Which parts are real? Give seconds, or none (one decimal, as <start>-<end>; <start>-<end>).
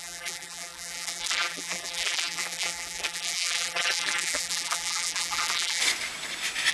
5.8-6.7